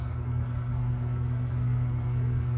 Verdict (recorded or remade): remade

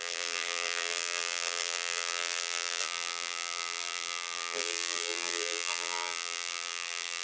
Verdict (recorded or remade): remade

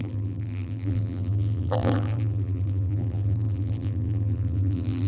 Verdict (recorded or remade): remade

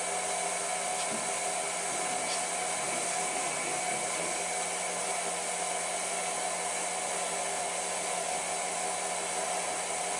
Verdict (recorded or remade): recorded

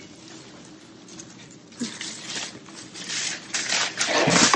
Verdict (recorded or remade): recorded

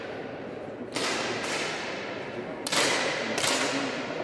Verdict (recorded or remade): recorded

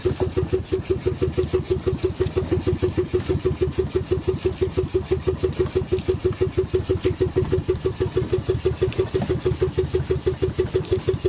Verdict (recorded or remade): recorded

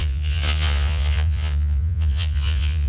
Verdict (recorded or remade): remade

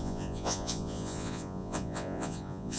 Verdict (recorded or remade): remade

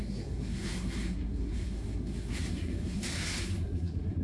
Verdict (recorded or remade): remade